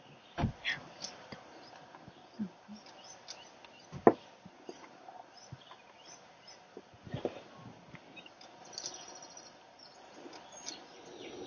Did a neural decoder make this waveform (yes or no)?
no